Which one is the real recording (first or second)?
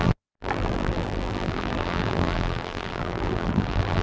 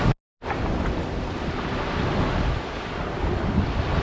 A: second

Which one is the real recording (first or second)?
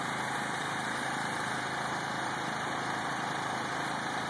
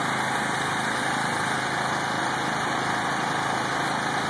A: second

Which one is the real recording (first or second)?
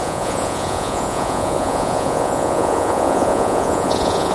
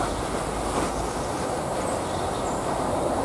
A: second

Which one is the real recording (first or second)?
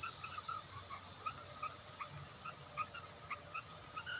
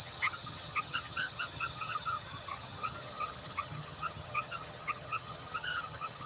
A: first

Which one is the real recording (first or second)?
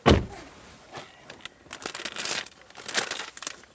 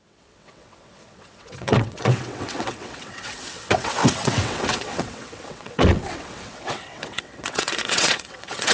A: first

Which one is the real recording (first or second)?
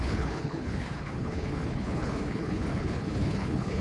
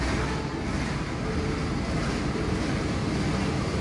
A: second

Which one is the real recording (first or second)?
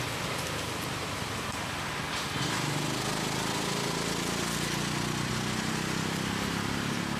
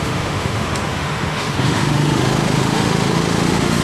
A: first